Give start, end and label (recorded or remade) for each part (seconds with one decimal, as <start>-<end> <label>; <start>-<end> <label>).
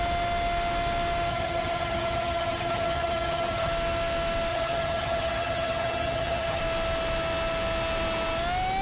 0.0-1.3 recorded; 1.3-3.7 remade; 3.7-4.5 recorded; 4.5-6.6 remade; 6.6-8.8 recorded